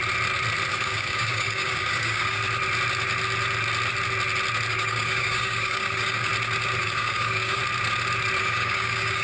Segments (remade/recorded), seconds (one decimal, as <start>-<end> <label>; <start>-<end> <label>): 0.0-0.7 recorded; 0.7-2.4 remade; 2.4-4.7 recorded; 4.7-6.3 remade; 6.3-6.8 recorded; 6.8-7.6 remade; 7.6-8.4 recorded; 8.4-9.2 remade